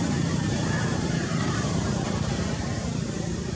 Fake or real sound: fake